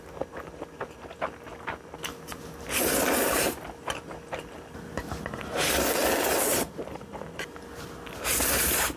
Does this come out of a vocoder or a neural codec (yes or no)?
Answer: no